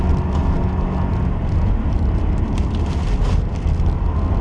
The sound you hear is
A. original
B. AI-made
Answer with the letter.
A